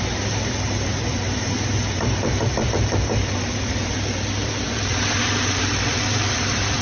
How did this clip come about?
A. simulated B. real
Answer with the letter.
A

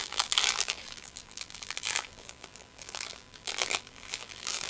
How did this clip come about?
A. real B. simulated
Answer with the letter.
B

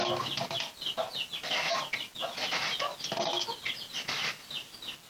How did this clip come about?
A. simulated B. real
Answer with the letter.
B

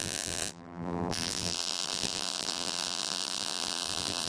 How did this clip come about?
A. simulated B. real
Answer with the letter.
A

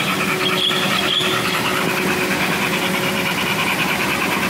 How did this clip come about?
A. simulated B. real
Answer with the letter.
A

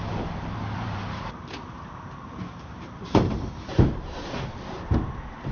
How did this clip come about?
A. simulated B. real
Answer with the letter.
A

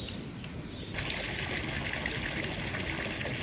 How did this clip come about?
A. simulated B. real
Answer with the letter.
B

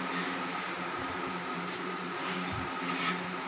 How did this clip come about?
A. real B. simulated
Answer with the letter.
B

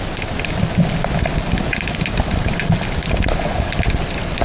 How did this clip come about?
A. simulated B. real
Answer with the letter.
B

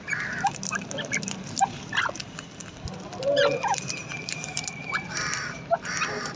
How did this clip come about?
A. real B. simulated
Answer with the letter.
B